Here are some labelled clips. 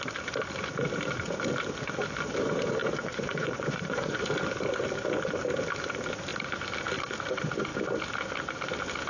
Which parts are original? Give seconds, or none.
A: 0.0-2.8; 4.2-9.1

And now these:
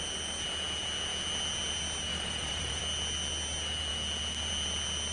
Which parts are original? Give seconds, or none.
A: 0.0-2.1; 2.8-5.1

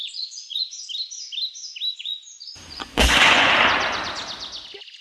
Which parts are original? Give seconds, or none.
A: 0.8-1.9; 3.5-5.0

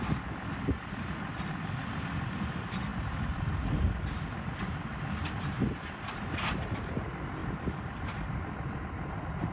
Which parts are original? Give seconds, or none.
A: 0.0-9.5

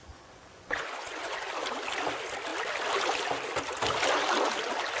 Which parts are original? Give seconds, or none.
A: 1.5-5.0

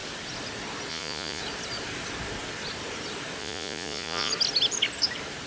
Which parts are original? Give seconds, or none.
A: 0.0-0.9; 1.4-3.4; 4.3-5.5